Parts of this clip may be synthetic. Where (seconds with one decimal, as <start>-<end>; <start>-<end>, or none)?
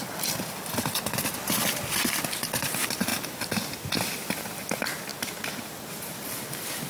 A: 0.0-3.1; 4.4-5.1; 5.6-6.9